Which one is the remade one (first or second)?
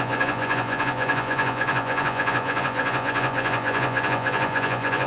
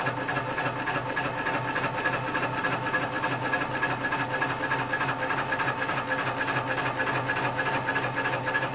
first